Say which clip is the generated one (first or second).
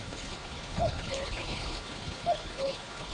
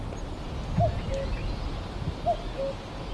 first